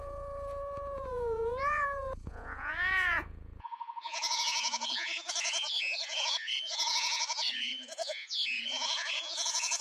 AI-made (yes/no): yes